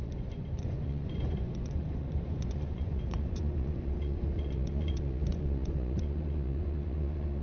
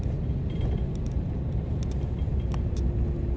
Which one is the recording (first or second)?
second